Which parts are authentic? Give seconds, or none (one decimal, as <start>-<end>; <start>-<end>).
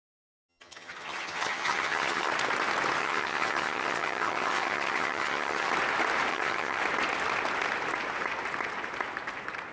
0.0-0.5; 2.3-3.0; 5.7-6.3; 6.8-9.7